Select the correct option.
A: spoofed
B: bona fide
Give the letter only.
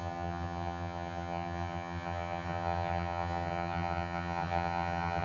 A